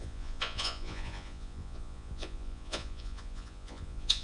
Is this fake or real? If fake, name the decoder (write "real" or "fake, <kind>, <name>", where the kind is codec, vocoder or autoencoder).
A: fake, vocoder, Vocos